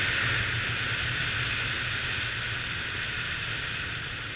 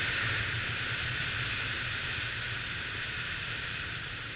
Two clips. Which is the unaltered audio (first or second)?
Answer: first